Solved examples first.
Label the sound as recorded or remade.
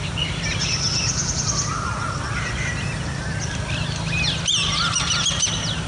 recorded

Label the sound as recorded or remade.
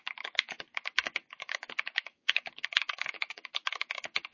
remade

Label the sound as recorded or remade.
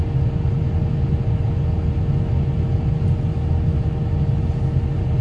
recorded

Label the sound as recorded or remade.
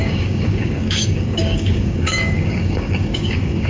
remade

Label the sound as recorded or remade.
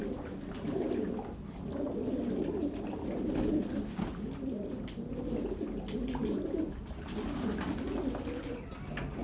recorded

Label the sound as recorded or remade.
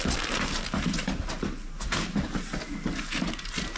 recorded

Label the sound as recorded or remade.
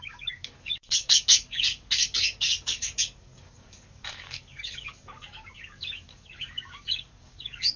remade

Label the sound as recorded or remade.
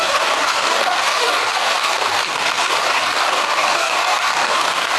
remade